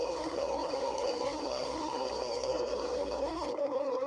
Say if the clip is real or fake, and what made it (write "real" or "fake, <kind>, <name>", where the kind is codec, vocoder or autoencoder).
fake, codec, SNAC